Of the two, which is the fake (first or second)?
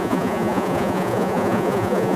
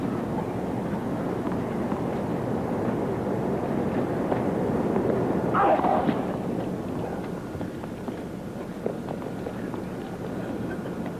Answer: first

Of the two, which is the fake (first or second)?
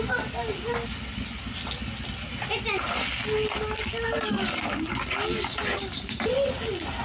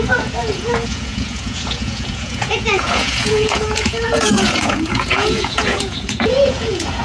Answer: second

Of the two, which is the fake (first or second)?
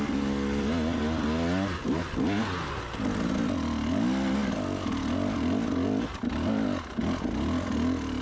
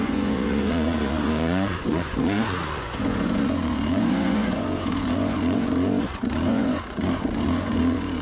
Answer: second